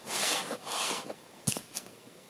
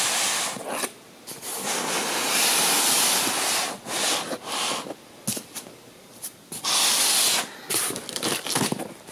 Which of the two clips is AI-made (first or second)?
first